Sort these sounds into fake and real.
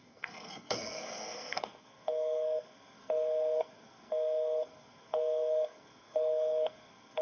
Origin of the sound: fake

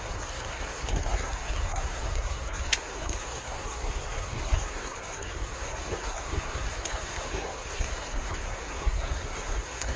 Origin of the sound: fake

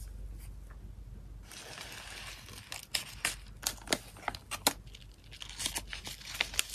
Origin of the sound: real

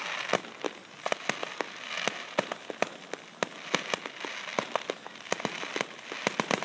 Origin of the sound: real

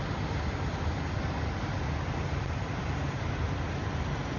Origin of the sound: real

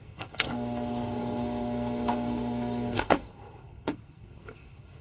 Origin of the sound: fake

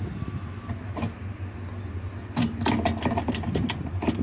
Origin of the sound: real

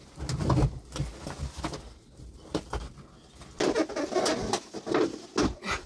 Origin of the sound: real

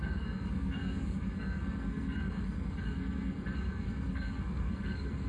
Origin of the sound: fake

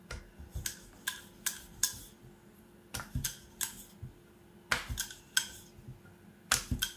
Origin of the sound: real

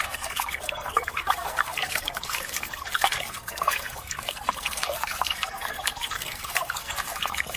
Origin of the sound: fake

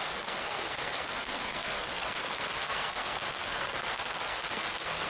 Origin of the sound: fake